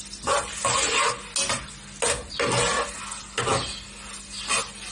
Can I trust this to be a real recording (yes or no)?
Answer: yes